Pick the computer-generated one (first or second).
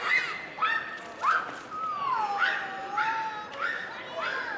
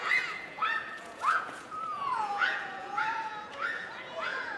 second